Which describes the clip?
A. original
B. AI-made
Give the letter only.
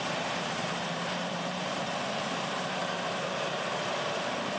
B